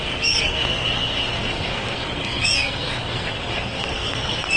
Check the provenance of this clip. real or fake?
fake